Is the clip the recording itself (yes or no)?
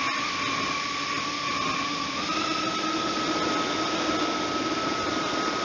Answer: yes